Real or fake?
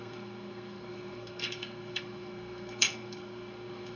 fake